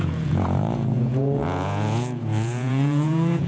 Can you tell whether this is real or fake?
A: fake